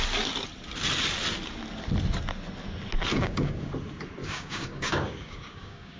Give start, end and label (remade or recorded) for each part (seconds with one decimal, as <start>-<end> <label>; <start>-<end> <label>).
0.0-3.1 recorded; 3.1-3.7 remade; 3.7-4.2 recorded; 4.2-6.0 remade